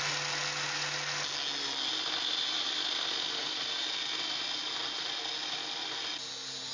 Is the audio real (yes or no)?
yes